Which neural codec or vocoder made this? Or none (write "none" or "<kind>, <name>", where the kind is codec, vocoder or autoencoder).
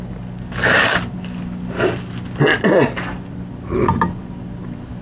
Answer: none